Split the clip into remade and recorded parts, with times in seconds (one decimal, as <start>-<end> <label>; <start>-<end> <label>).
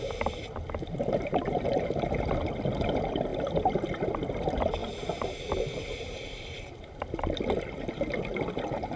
0.0-4.8 recorded; 4.8-7.0 remade; 7.0-9.0 recorded